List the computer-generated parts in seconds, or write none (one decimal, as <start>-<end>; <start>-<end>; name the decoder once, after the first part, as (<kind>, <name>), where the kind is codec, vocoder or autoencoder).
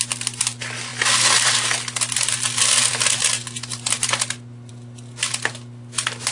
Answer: none